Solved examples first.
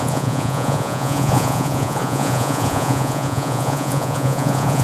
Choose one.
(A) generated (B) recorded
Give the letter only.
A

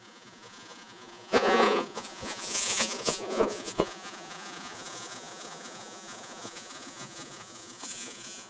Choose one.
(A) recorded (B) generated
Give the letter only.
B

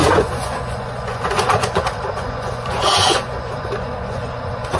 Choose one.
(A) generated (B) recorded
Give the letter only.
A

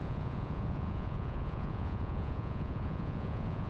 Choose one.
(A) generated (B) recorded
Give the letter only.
A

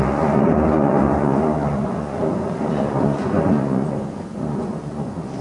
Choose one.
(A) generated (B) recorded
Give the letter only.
A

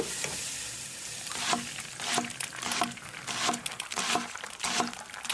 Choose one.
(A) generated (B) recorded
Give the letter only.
B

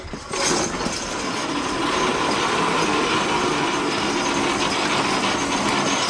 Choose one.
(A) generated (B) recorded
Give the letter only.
B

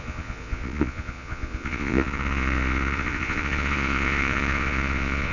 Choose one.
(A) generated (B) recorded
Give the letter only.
A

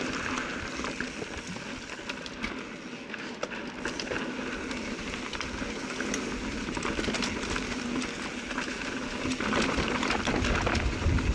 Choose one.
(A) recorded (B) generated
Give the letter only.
A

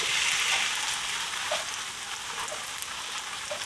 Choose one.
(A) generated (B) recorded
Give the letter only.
B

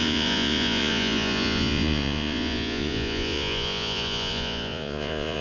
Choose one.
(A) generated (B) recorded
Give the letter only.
A